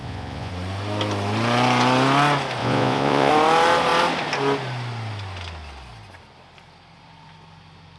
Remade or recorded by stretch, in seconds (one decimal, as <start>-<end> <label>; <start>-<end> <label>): 0.0-0.5 remade; 0.5-2.6 recorded; 2.6-3.3 remade; 3.3-8.0 recorded